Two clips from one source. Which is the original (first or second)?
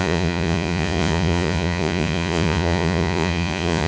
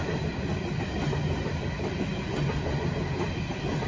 second